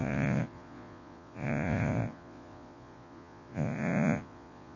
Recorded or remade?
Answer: remade